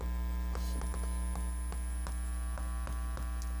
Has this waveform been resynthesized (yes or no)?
no